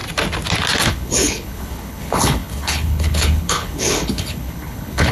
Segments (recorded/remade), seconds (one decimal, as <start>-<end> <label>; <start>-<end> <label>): 0.0-0.9 recorded; 0.9-5.1 remade